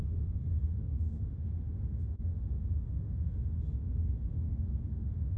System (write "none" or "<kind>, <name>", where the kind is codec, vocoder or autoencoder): autoencoder, DAC-VAE